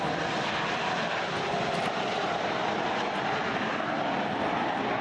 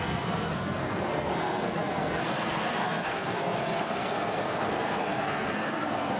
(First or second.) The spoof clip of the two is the second